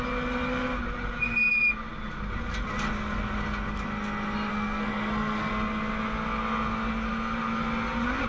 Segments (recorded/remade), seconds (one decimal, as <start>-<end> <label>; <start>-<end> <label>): 0.0-4.5 recorded; 4.5-5.5 remade; 5.5-8.3 recorded